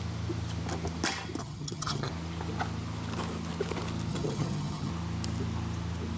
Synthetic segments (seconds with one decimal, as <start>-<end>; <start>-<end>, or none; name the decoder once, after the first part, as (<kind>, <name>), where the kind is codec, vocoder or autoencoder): 1.4-2.1 (vocoder, HiFi-GAN); 4.1-4.9